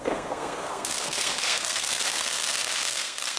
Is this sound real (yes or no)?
no